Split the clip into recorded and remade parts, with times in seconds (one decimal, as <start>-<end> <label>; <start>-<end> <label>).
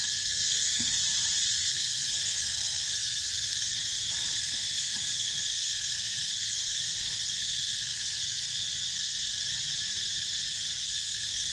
0.0-1.0 remade; 1.0-1.5 recorded; 1.5-9.4 remade; 9.4-10.5 recorded; 10.5-11.5 remade